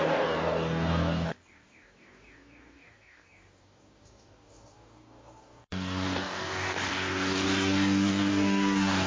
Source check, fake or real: fake